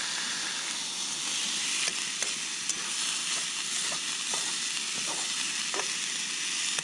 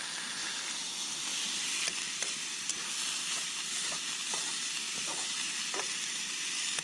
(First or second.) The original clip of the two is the first